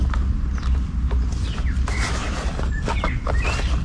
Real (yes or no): yes